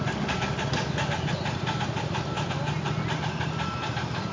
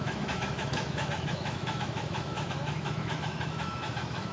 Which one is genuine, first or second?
first